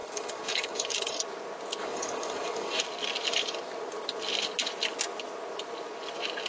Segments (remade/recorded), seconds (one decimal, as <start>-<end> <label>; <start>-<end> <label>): 0.0-1.2 remade; 1.2-1.8 recorded; 1.8-2.8 remade; 2.8-6.5 recorded